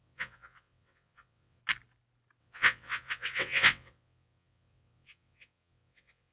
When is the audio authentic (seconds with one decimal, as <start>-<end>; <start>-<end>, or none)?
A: 1.6-2.4